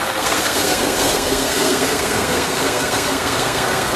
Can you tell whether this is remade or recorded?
remade